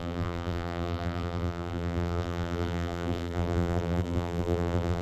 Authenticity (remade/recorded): remade